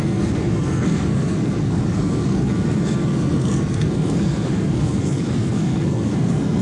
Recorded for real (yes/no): no